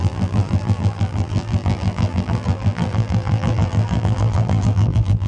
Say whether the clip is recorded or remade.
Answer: remade